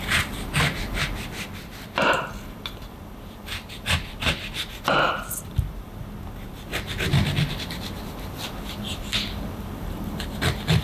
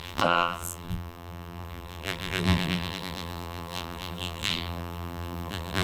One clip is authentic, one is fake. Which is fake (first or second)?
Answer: second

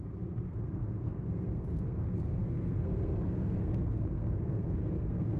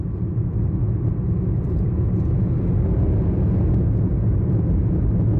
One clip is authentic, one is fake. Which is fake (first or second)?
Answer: first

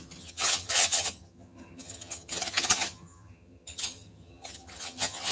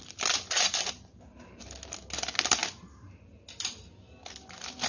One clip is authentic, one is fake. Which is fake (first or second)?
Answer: first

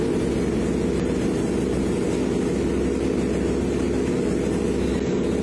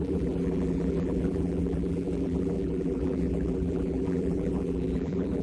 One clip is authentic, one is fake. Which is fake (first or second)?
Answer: second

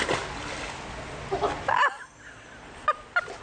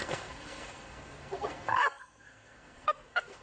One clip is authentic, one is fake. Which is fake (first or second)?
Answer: second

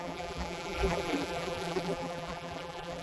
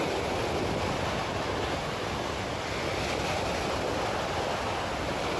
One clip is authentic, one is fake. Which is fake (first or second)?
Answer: first